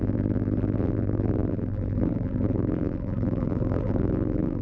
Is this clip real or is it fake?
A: fake